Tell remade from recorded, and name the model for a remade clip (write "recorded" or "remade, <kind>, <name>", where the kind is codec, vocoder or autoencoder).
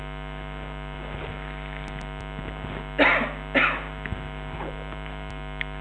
recorded